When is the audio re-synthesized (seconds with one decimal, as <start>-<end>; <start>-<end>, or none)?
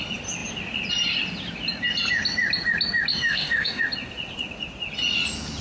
3.1-3.8